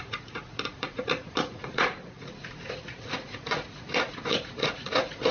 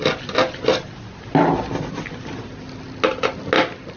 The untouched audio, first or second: second